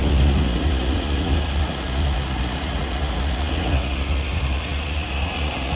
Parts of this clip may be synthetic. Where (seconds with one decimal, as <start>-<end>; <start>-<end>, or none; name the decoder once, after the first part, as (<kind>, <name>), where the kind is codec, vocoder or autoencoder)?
0.0-5.8 (vocoder, Vocos)